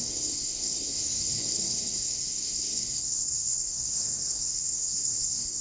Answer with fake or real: fake